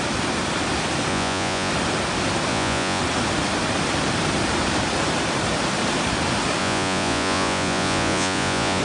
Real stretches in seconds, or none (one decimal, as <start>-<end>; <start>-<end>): 0.0-1.1; 1.7-2.5; 3.0-6.6